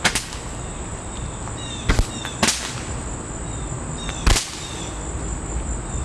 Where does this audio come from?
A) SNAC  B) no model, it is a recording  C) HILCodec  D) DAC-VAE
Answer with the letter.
B